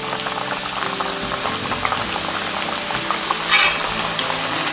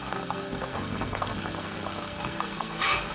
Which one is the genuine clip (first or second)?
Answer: first